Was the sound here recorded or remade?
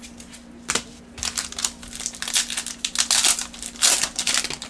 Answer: recorded